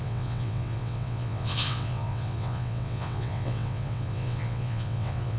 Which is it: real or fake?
fake